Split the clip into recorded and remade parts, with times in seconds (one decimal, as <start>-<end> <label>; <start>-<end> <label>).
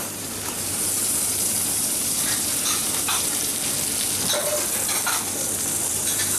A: 0.0-3.5 remade; 3.5-5.9 recorded; 5.9-6.4 remade